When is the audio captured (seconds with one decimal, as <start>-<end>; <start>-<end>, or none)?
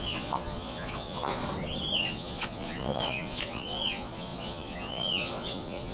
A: 1.4-2.0